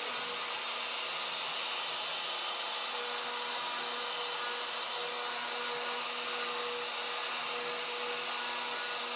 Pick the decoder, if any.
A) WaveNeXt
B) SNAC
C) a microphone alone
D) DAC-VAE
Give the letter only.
C